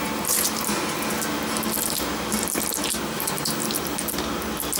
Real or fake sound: real